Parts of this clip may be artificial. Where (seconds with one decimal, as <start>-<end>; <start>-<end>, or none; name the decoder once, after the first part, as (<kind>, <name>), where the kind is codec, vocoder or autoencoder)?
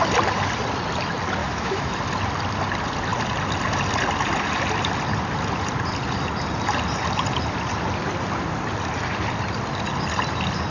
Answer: 1.4-1.9 (autoencoder, DAC-VAE)